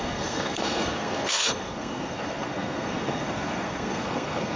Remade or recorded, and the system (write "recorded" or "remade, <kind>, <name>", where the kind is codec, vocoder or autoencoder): remade, codec, SNAC